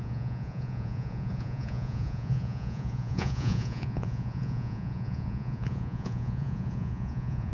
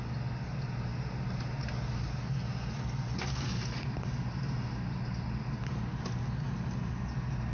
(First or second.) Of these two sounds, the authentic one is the second